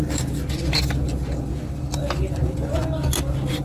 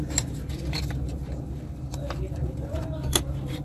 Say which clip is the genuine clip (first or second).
first